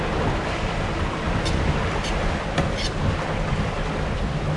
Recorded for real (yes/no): yes